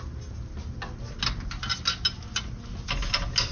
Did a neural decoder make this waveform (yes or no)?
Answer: no